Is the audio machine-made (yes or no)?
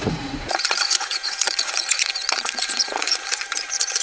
yes